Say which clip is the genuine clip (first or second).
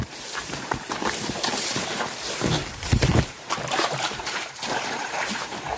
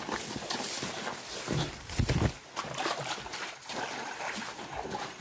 second